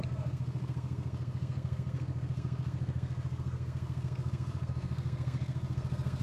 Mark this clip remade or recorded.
remade